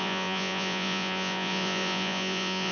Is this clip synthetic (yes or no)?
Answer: yes